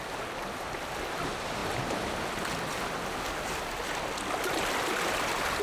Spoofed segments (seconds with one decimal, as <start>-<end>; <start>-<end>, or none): none

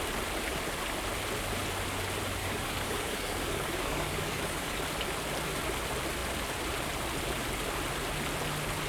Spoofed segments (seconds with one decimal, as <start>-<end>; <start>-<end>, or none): 2.4-4.8

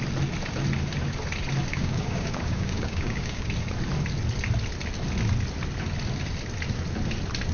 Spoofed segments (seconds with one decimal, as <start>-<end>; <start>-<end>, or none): 1.7-3.5

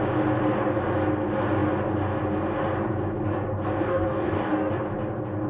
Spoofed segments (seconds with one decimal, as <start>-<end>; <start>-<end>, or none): 3.9-4.7

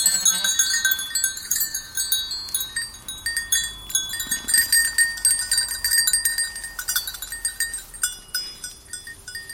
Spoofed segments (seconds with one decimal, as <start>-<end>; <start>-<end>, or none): 1.4-1.9

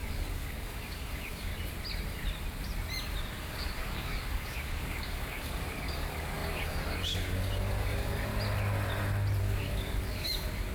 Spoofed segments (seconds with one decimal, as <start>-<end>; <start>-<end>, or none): 0.0-1.5; 3.3-8.3; 9.4-10.7

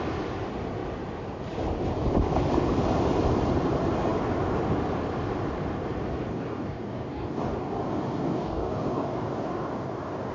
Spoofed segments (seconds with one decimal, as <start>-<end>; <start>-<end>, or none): 6.3-10.3